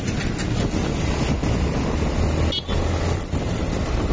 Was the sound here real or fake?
real